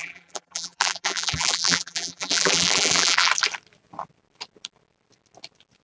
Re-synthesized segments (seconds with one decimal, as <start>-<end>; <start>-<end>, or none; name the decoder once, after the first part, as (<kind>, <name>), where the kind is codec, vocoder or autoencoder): 0.0-3.3 (vocoder, BigVGAN v2)